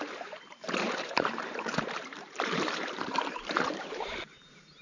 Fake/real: fake